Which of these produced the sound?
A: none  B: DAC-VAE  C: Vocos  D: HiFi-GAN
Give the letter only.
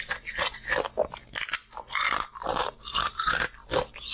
A